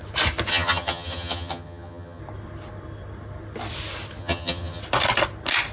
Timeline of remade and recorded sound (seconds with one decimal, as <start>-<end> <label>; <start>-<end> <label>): 0.0-0.5 recorded; 0.5-2.2 remade; 2.2-4.2 recorded; 4.2-4.8 remade; 4.8-5.7 recorded